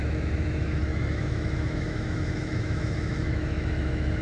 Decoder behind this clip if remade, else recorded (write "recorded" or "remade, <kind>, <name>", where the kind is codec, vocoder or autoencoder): remade, autoencoder, DAC-VAE